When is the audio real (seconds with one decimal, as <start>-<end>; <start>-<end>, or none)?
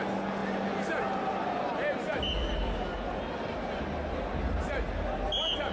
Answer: 0.0-5.7